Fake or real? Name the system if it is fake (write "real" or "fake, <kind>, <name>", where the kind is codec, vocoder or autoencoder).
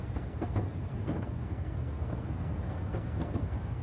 fake, codec, SNAC